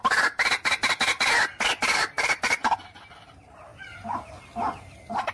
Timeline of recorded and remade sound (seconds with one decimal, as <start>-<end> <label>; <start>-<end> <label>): 0.0-5.3 recorded